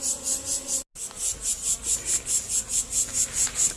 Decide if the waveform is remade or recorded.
recorded